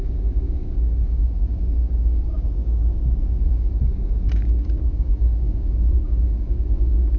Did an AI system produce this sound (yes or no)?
yes